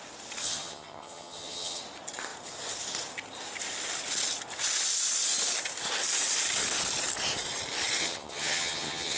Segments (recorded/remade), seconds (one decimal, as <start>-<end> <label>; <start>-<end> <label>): 0.0-0.4 recorded; 0.4-1.8 remade; 1.8-8.0 recorded; 8.0-9.2 remade